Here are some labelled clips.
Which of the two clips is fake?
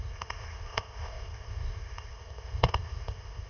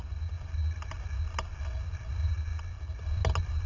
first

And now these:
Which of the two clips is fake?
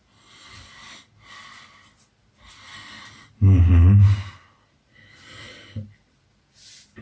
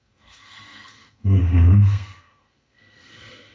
second